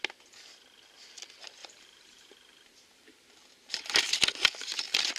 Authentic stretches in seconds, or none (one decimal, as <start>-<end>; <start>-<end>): 0.0-1.6; 3.8-5.2